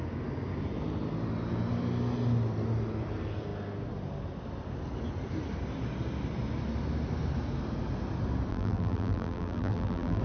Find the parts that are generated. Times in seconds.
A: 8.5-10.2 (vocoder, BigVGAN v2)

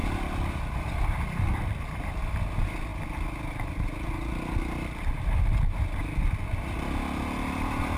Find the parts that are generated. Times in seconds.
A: none

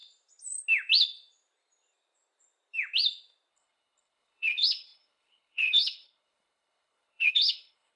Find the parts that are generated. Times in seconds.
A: 3.5-8.0 (codec, HILCodec)